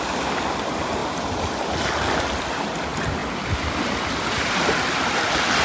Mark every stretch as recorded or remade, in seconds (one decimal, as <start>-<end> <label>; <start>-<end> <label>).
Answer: 0.0-5.6 recorded